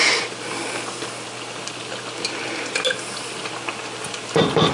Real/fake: real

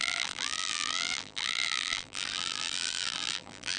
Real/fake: fake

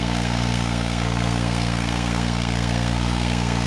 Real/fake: fake